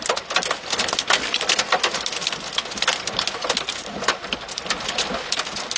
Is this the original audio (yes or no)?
yes